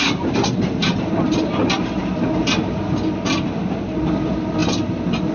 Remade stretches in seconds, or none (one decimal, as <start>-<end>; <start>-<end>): none